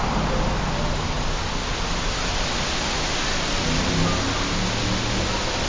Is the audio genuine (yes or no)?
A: yes